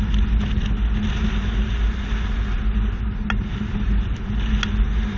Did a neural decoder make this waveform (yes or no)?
no